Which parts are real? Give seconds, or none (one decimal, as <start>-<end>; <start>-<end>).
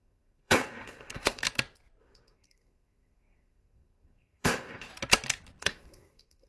1.4-2.0; 4.9-5.6